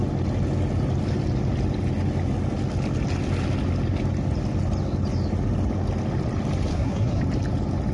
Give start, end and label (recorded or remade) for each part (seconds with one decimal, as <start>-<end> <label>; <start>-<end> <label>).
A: 0.0-6.7 recorded; 6.7-7.2 remade; 7.2-7.9 recorded